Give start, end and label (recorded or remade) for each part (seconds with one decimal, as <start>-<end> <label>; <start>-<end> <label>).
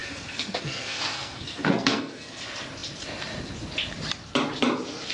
0.0-2.4 remade; 2.4-5.1 recorded